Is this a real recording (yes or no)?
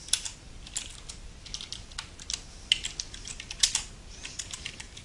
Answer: yes